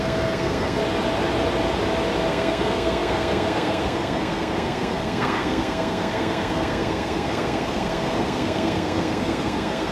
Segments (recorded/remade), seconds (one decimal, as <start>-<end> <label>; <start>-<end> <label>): 0.0-0.8 remade; 0.8-2.3 recorded; 2.3-9.9 remade